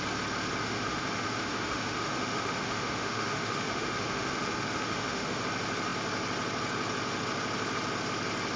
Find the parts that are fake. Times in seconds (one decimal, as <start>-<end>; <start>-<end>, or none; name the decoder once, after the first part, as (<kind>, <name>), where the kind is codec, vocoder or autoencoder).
0.6-5.4 (autoencoder, DAC-VAE)